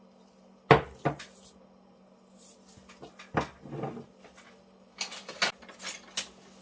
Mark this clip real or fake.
real